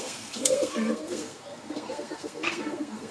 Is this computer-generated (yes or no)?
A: yes